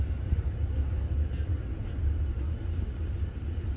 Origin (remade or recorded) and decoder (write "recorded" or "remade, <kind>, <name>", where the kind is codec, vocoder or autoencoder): recorded